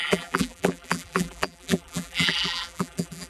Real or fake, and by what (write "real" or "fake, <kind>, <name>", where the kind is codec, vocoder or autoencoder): fake, vocoder, BigVGAN v2